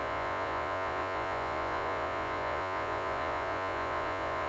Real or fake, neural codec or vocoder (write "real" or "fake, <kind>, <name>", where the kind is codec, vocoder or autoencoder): fake, vocoder, Vocos